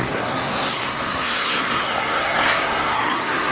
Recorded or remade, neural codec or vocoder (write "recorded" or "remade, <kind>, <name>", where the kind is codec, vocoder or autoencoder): remade, codec, SNAC